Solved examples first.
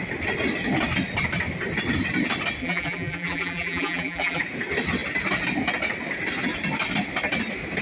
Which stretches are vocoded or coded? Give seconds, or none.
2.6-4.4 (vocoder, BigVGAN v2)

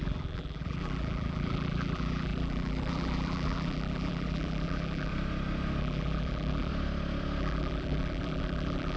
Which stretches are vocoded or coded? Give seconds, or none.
0.0-5.1 (vocoder, BigVGAN v2); 5.8-6.7; 7.4-9.0

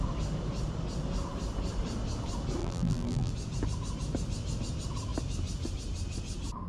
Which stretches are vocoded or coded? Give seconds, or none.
2.6-3.3 (vocoder, BigVGAN v2)

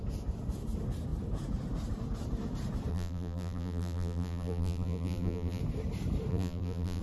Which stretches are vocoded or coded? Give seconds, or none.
2.9-5.6 (vocoder, BigVGAN v2); 6.3-7.0

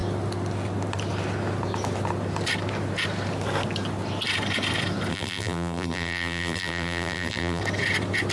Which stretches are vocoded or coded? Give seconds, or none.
5.1-7.6 (vocoder, BigVGAN v2)

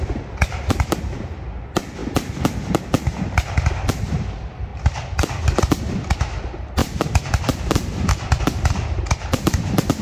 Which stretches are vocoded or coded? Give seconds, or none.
4.7-5.8 (vocoder, BigVGAN v2); 6.8-8.4

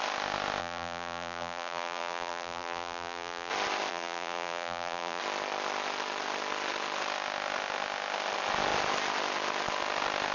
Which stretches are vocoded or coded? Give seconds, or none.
0.6-3.5 (vocoder, BigVGAN v2); 3.9-5.2